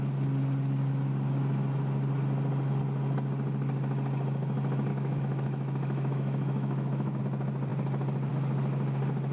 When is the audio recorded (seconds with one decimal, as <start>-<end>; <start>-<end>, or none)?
0.0-4.9; 7.2-9.3